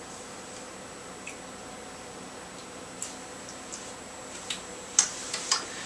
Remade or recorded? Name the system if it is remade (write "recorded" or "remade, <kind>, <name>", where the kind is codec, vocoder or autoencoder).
recorded